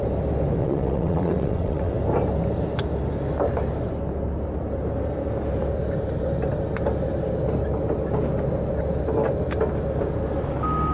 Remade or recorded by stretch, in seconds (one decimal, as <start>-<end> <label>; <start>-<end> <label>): 0.0-0.6 recorded; 0.6-1.9 remade; 1.9-10.9 recorded